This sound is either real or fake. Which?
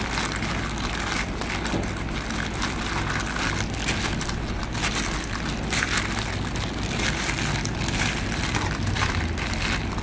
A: real